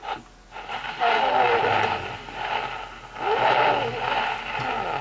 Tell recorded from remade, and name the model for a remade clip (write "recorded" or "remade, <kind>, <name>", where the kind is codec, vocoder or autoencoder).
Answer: recorded